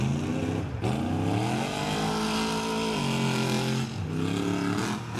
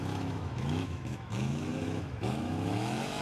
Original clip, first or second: first